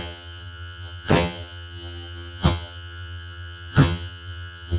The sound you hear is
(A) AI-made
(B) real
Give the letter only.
A